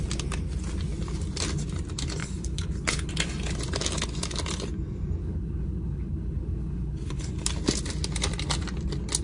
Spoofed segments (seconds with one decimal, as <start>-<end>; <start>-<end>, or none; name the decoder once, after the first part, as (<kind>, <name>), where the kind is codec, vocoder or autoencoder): 2.2-3.1 (codec, HILCodec); 5.2-7.3